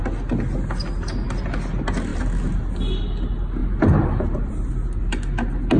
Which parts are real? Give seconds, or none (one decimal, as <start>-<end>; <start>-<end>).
0.0-2.1; 2.7-3.6; 4.7-5.8

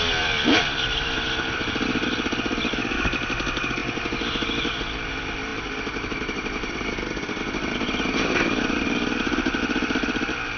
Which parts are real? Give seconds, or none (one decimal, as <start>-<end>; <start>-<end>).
3.8-5.1

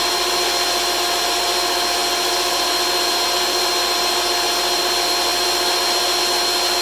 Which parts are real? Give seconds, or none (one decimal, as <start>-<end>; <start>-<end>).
0.0-6.8

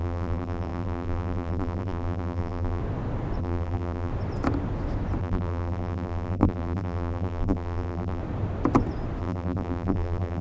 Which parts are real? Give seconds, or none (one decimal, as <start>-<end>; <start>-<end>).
2.8-3.4; 4.1-5.2; 8.2-9.2

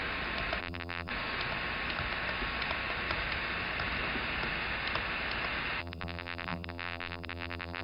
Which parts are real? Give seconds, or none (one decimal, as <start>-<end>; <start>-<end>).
0.0-0.6; 1.1-5.8

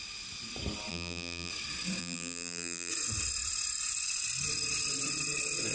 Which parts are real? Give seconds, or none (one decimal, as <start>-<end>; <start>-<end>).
0.0-0.9; 1.5-2.0; 2.9-5.7